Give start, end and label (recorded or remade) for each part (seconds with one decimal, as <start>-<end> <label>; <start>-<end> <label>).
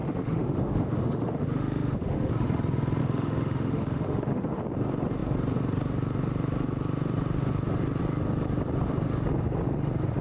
0.0-2.3 remade; 2.3-3.0 recorded; 3.0-4.6 remade; 4.6-10.2 recorded